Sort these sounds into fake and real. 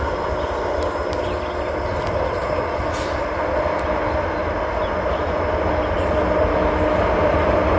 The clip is real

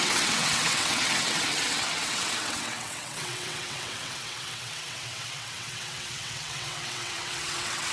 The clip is fake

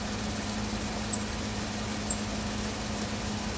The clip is real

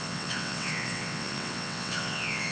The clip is fake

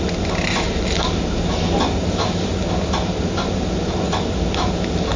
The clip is real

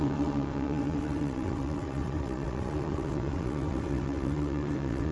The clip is fake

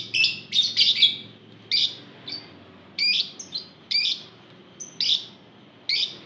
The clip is real